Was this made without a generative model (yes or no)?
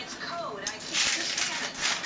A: yes